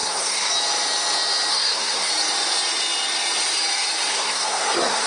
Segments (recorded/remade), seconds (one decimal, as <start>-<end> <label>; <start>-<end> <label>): 0.0-0.5 remade; 0.5-1.5 recorded; 1.5-2.1 remade; 2.1-4.1 recorded; 4.1-5.1 remade